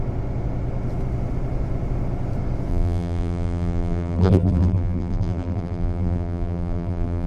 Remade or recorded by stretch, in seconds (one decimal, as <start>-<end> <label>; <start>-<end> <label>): 0.0-2.7 recorded; 2.7-7.3 remade